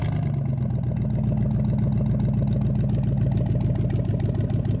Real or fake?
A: real